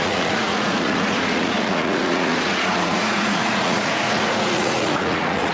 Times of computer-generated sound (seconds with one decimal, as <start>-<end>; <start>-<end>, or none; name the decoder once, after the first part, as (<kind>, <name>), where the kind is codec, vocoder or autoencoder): 0.0-5.5 (vocoder, Vocos)